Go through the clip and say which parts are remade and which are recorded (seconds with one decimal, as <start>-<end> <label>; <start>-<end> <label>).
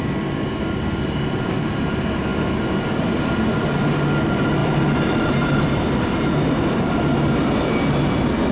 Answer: 0.0-4.6 recorded; 4.6-6.8 remade; 6.8-8.5 recorded